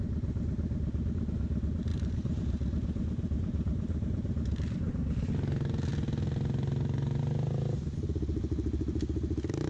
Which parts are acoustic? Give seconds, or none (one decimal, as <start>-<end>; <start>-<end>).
0.0-1.9; 5.3-9.7